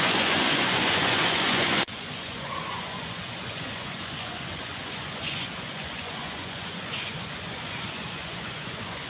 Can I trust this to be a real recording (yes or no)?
no